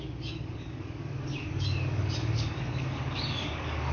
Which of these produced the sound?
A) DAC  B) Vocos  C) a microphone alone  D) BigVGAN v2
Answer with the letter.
A